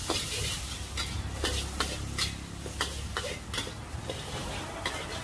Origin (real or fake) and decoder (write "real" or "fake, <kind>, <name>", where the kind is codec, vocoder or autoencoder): real